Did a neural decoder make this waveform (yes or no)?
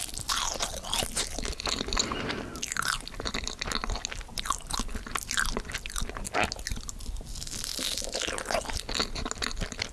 no